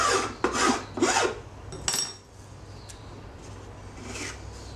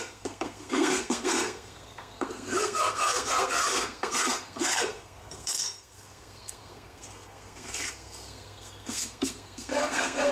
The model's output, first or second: second